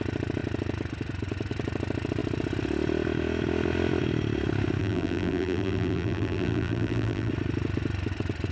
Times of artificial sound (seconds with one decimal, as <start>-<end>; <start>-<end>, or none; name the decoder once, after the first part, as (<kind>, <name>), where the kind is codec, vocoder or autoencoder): 4.8-7.3 (vocoder, BigVGAN v2)